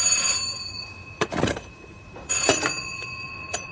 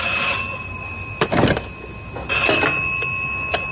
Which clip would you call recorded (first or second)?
second